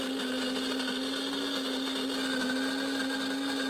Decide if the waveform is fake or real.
real